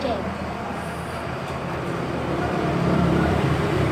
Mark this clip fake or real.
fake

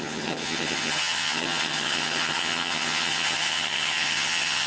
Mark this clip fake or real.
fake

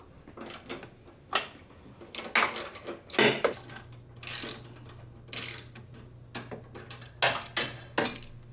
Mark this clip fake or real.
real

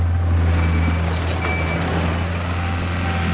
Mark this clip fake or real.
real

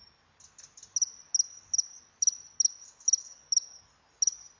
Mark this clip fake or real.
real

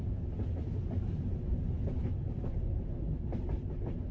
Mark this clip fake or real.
real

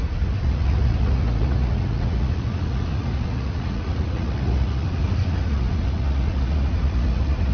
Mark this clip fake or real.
fake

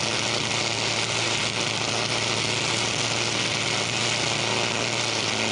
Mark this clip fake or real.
real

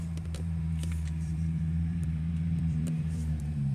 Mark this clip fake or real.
fake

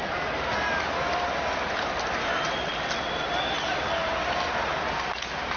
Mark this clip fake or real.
real